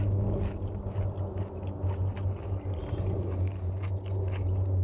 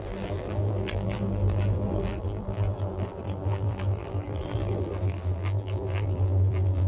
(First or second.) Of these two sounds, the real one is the first